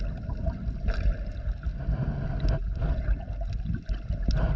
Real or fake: real